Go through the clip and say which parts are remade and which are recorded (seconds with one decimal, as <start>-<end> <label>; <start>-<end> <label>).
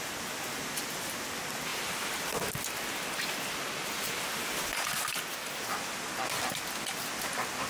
0.0-7.7 recorded